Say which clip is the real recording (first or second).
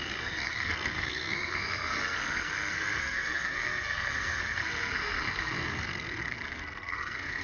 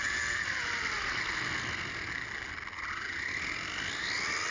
second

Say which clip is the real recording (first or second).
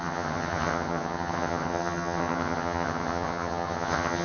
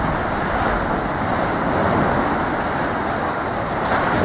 second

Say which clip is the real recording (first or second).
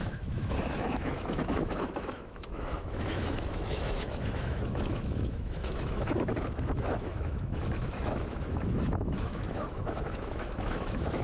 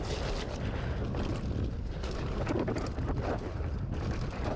second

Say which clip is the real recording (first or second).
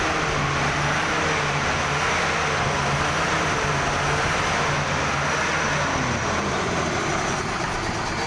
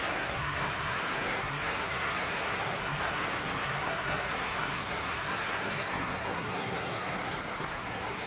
first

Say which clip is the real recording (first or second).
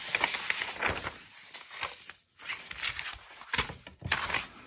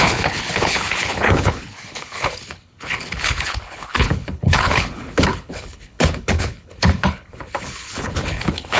first